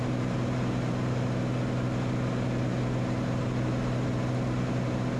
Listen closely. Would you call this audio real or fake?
real